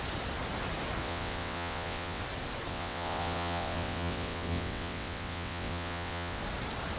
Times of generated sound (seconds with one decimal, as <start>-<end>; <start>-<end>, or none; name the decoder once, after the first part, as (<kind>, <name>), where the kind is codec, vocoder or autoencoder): 1.0-2.2 (vocoder, WaveNeXt); 2.7-6.4